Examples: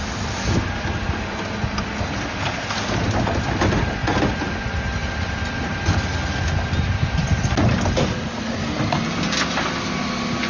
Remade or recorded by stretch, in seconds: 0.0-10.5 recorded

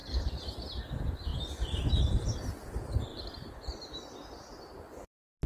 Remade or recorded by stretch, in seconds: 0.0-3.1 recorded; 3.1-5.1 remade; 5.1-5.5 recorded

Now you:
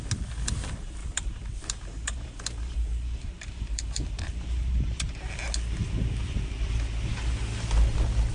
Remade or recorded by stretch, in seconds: 0.0-1.0 recorded; 1.0-5.1 remade; 5.1-8.3 recorded

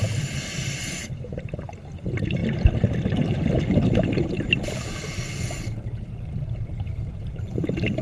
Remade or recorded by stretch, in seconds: 0.0-2.4 remade; 2.4-6.2 recorded; 6.2-8.0 remade

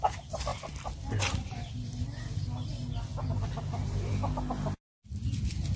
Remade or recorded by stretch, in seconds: 0.0-0.5 recorded; 0.5-2.0 remade; 2.0-3.1 recorded; 3.1-4.1 remade; 4.1-5.8 recorded

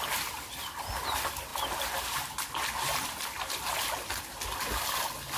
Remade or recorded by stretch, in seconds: 0.0-5.4 recorded

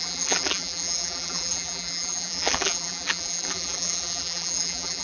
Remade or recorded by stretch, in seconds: 0.0-5.0 remade

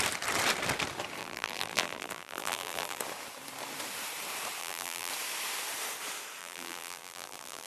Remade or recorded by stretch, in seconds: 0.0-1.2 recorded; 1.2-3.0 remade; 3.0-4.6 recorded; 4.6-5.1 remade; 5.1-6.4 recorded; 6.4-7.7 remade